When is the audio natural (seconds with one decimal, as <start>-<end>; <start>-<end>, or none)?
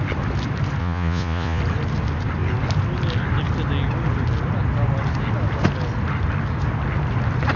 0.0-0.8; 1.6-7.6